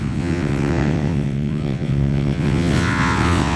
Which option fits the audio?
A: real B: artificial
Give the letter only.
B